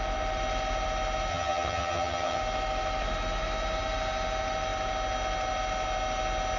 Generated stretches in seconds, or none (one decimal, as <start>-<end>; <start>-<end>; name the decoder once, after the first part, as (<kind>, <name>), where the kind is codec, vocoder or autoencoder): 1.3-2.4 (vocoder, HiFi-GAN)